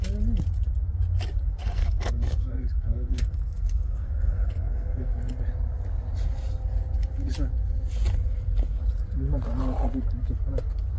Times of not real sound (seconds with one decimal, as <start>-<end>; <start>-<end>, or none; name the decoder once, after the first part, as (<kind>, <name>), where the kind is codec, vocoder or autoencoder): 1.6-5.2 (codec, SNAC)